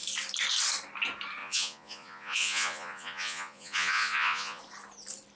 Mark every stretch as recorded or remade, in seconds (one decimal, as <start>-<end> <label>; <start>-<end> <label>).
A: 0.0-1.4 recorded; 1.4-4.6 remade; 4.6-5.4 recorded